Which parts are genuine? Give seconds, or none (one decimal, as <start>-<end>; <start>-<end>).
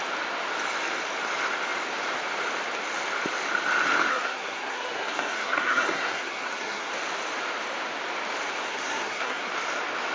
0.0-4.1; 6.9-8.7; 9.5-10.1